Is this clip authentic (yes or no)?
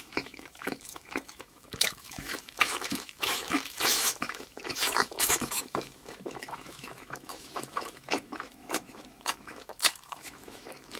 no